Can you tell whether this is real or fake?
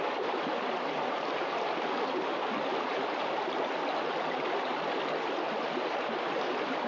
real